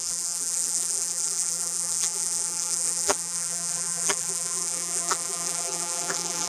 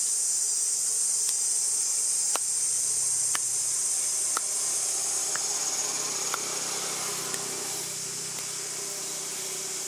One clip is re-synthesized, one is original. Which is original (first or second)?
second